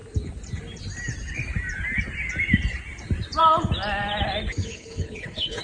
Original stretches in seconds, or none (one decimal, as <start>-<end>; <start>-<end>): 0.0-4.6

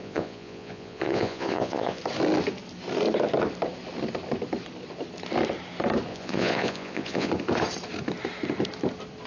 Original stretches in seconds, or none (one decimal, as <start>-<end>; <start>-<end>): 2.0-6.1; 7.3-9.3

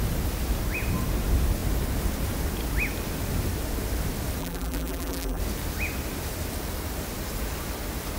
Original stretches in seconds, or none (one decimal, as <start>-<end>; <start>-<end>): 0.0-4.4; 5.4-8.2

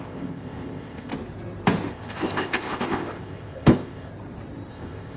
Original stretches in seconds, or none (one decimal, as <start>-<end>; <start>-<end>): 1.1-1.9; 4.1-4.7

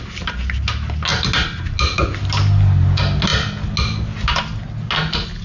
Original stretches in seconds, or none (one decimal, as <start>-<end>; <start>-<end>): 0.0-5.4